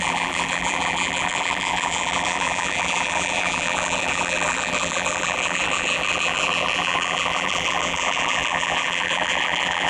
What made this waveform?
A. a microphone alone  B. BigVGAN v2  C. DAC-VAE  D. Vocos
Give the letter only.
B